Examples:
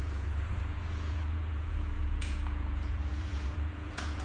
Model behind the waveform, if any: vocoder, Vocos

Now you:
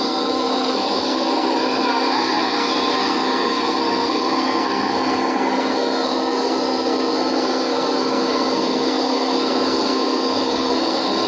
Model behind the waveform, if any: codec, SNAC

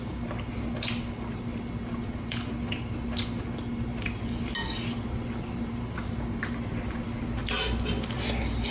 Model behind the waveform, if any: none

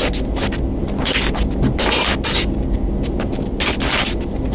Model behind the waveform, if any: none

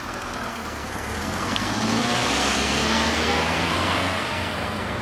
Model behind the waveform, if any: codec, SNAC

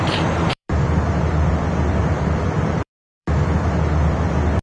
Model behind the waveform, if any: vocoder, BigVGAN v2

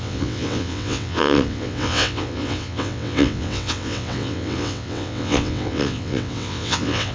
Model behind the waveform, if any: vocoder, WaveNeXt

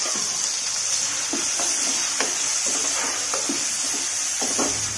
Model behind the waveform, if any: none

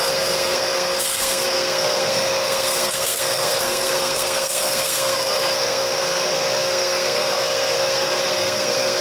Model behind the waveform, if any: codec, SNAC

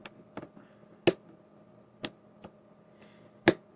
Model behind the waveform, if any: none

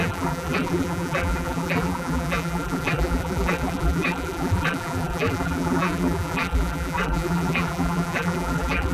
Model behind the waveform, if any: vocoder, BigVGAN v2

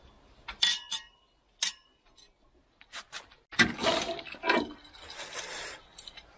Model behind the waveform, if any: none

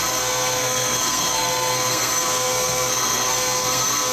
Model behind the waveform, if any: codec, SNAC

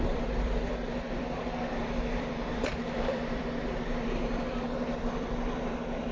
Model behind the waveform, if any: vocoder, BigVGAN v2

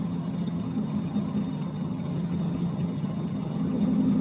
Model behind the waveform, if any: vocoder, HiFi-GAN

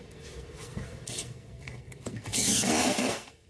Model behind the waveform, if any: codec, SNAC